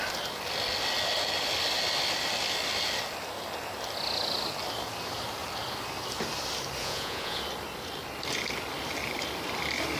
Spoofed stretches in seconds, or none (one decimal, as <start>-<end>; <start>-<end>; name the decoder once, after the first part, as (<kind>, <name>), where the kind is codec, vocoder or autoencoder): 6.8-7.4 (vocoder, Vocos)